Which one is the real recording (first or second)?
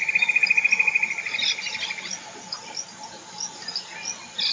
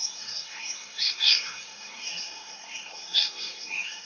first